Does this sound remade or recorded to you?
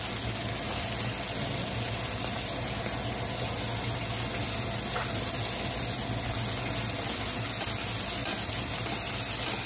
recorded